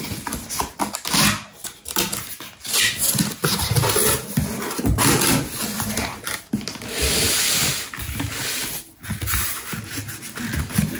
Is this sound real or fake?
real